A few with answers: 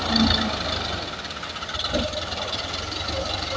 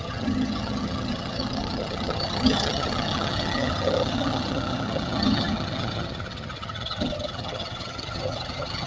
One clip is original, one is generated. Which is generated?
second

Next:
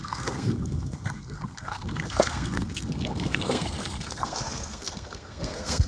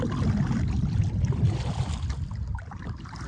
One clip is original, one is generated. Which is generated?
first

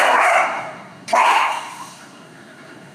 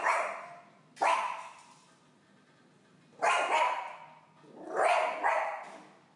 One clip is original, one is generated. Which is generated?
first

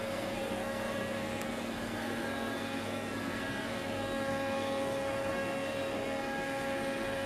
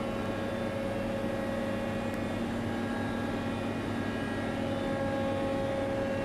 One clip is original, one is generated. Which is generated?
first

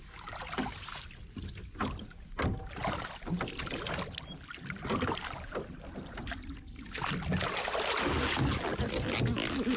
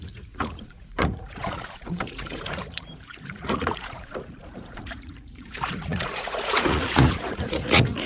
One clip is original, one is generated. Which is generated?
second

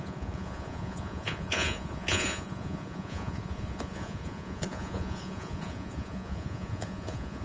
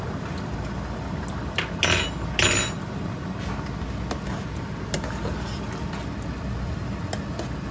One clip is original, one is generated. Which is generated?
first